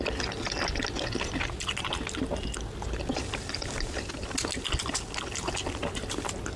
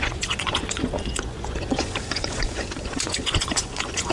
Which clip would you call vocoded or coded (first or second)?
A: second